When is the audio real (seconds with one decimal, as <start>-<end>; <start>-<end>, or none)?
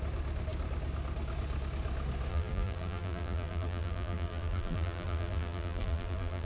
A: 0.0-2.3